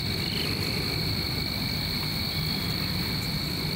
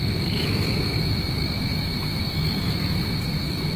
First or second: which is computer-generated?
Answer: second